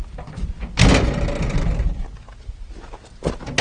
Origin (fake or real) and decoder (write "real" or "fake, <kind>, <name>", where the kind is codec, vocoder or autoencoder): real